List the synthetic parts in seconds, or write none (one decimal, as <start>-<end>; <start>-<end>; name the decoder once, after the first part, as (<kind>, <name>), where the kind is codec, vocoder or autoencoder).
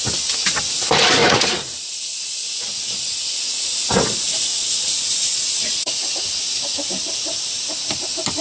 1.2-1.9 (vocoder, Vocos); 4.5-6.4